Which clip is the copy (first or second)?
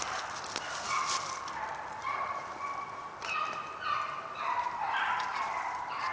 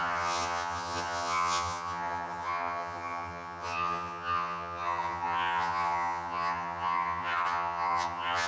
second